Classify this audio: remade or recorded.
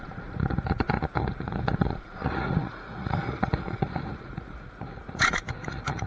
remade